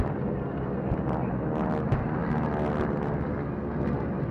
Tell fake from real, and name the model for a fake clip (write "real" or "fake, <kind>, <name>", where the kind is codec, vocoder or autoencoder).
real